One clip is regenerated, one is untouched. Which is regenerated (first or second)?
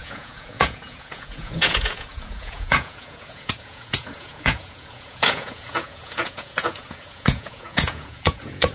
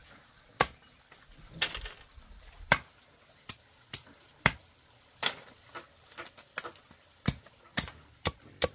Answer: first